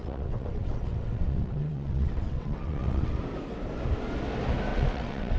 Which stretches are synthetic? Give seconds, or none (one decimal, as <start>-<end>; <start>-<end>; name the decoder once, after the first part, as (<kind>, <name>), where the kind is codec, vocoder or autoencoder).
0.0-3.2 (vocoder, WaveNeXt); 4.7-5.4